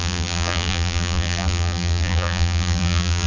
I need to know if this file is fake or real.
fake